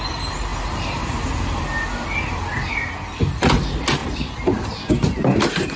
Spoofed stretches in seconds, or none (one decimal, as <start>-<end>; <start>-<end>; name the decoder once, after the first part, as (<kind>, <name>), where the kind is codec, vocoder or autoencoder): none